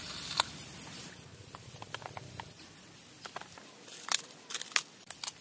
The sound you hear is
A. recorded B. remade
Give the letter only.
A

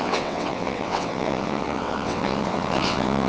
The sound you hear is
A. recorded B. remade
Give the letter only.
B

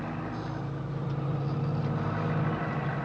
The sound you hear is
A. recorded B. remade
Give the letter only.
A